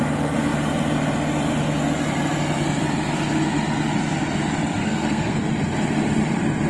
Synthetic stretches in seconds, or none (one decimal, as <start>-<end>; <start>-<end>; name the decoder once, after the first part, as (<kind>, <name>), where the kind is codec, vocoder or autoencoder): 4.8-5.4 (codec, SNAC)